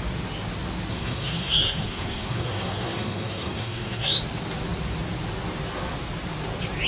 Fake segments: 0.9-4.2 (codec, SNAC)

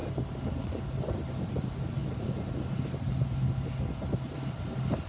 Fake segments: none